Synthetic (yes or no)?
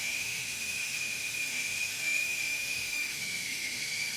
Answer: yes